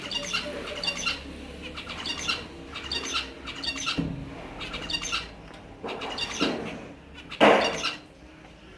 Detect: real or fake real